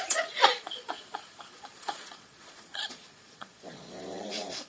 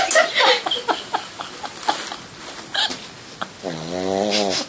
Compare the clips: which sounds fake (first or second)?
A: first